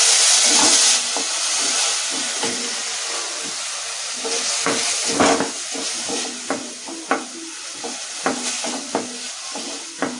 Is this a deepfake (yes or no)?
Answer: no